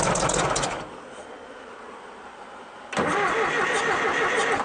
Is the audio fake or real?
real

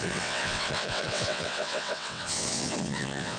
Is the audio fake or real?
fake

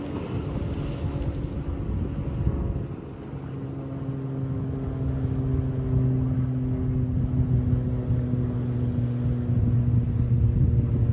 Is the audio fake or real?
real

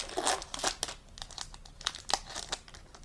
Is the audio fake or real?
real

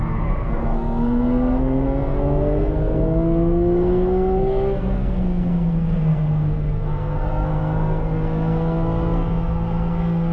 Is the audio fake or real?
fake